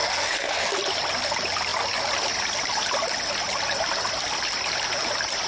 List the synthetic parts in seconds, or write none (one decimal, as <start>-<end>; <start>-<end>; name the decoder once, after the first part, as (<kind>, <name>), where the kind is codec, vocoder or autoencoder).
0.0-0.7 (codec, SNAC)

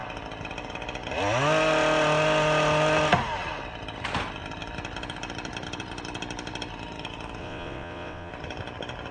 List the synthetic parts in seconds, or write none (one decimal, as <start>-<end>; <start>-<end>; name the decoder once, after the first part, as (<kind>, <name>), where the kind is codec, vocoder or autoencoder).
7.4-8.3 (vocoder, WaveNeXt)

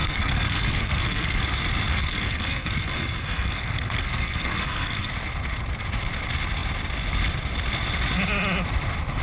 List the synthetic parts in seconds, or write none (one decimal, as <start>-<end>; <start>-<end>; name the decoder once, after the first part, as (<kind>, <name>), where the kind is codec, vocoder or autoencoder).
0.0-1.4 (codec, SNAC); 1.9-5.1

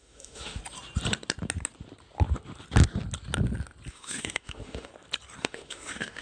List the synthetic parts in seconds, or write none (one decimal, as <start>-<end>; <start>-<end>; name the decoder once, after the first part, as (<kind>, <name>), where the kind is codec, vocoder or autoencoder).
0.0-0.6 (autoencoder, DAC-VAE); 3.9-4.9; 5.4-6.2

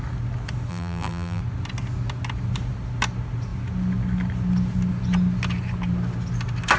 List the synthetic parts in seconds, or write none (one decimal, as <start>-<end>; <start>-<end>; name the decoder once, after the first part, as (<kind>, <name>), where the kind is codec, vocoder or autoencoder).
0.7-1.4 (vocoder, BigVGAN v2)

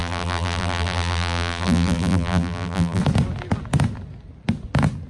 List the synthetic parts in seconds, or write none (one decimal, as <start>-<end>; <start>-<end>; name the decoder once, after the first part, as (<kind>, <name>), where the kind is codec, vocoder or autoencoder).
0.0-3.0 (vocoder, BigVGAN v2)

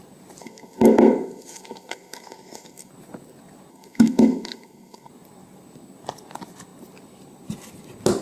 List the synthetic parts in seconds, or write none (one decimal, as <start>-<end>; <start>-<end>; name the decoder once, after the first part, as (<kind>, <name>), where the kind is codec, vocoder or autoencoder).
0.4-2.9 (codec, SNAC); 3.7-5.1

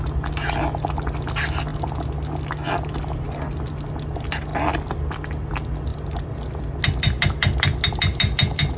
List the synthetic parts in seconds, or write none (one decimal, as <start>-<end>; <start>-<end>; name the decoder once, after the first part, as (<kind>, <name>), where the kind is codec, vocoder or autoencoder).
5.9-6.8 (vocoder, BigVGAN v2)